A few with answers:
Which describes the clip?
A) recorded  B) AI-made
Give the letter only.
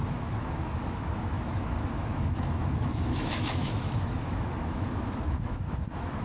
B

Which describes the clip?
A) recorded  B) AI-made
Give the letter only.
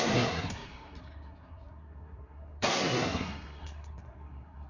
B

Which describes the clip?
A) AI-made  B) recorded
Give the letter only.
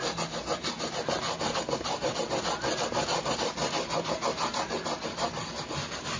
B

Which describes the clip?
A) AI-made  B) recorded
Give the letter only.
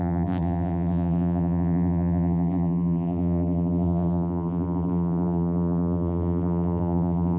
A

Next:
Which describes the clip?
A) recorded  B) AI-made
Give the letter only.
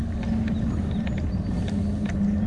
A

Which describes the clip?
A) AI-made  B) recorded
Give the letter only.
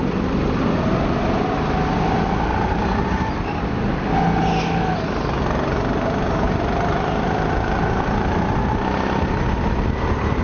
B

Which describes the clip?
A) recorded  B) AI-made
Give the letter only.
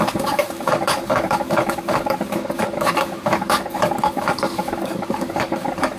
B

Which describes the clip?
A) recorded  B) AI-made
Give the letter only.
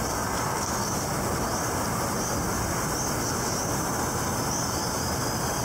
A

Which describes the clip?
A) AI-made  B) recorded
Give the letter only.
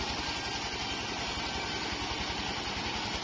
B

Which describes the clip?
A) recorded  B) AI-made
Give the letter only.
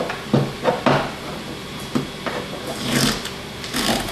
A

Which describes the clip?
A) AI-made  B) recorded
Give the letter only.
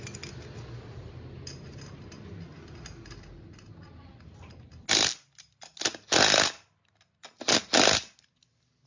B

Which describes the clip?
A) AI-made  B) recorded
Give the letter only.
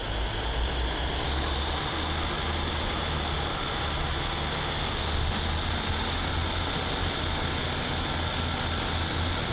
B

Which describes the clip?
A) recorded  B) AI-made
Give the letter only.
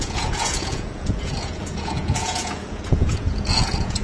B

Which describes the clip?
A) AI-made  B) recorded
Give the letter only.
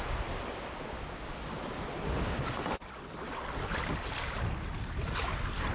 B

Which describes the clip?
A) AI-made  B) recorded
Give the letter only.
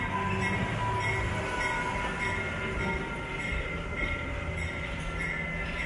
B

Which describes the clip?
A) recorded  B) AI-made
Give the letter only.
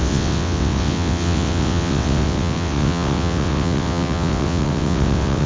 B